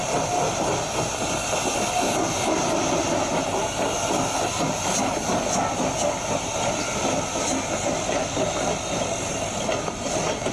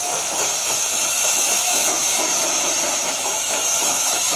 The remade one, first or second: second